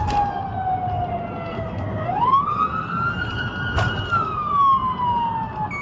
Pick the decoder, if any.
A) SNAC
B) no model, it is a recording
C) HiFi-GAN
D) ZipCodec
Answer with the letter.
B